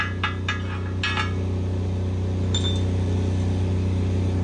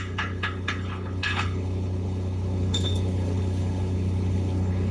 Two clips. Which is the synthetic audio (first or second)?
second